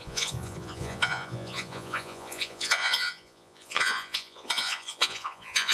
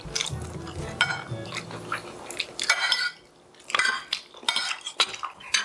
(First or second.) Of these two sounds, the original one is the second